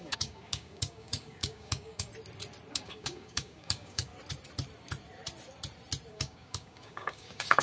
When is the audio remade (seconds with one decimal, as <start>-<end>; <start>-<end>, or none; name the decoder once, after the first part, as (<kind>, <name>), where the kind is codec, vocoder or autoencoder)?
0.0-2.1 (codec, DAC); 2.7-4.1; 6.1-7.6